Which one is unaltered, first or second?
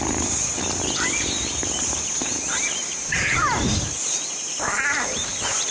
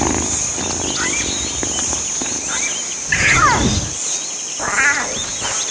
second